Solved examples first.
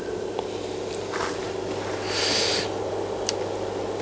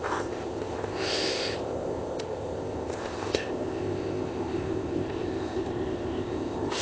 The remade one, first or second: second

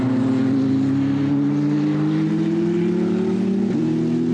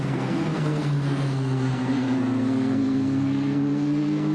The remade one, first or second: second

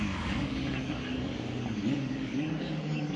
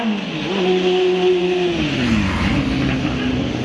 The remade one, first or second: first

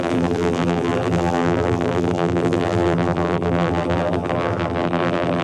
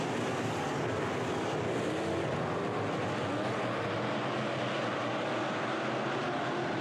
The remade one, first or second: first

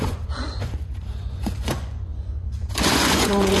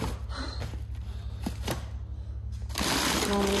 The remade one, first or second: first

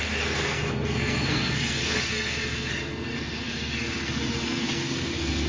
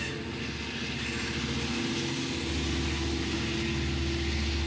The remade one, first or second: first